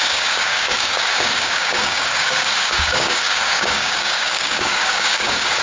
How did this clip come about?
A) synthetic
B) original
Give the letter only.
A